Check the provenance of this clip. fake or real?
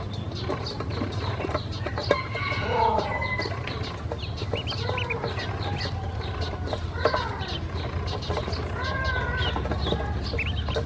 real